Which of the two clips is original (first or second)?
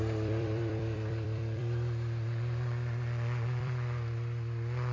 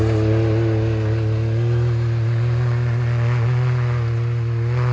second